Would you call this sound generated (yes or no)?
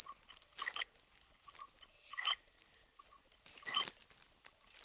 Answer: no